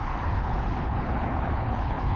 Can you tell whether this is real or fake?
fake